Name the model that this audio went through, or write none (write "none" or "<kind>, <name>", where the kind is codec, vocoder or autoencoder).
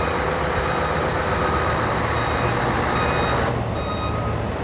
none